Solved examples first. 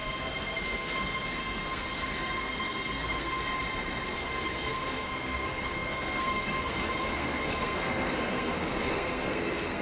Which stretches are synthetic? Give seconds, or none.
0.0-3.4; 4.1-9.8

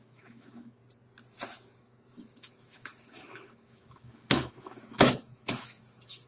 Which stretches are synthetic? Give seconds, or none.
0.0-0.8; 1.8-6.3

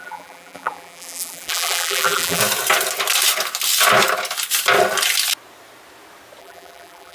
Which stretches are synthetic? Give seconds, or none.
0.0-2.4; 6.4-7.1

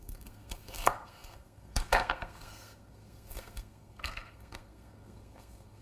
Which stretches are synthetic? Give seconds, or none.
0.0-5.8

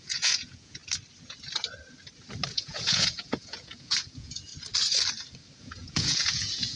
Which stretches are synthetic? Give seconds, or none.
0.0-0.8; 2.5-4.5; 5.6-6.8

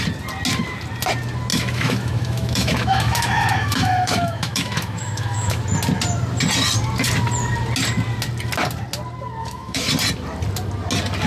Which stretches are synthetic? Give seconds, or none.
1.5-5.6; 9.4-9.9

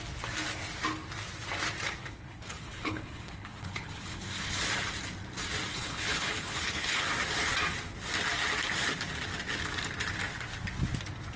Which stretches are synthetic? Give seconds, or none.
2.0-4.6; 5.7-7.0